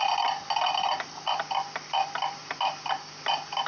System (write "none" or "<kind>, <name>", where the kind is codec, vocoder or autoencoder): none